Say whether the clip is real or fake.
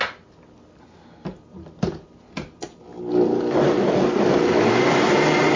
real